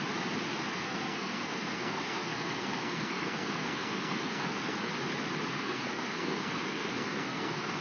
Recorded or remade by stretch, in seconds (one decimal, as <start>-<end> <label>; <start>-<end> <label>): 0.0-0.7 recorded; 0.7-4.9 remade; 4.9-5.5 recorded; 5.5-7.8 remade